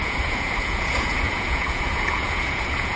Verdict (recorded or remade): remade